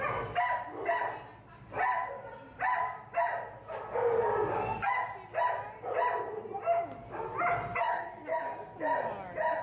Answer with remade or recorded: recorded